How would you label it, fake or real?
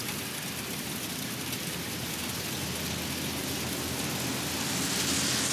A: real